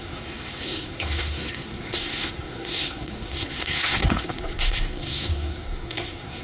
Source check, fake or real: fake